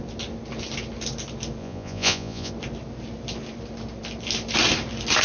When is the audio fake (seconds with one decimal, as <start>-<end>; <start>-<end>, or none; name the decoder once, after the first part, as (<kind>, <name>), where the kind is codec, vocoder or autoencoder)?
1.6-2.5 (vocoder, Vocos)